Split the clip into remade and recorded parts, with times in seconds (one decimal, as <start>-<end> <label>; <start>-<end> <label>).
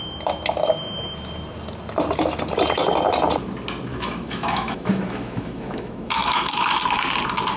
0.0-3.9 recorded; 3.9-6.7 remade; 6.7-7.6 recorded